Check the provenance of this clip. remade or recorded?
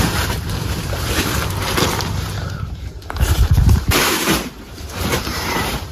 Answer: remade